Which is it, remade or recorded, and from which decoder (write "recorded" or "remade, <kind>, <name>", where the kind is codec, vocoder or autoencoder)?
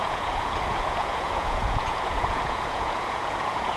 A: remade, vocoder, Vocos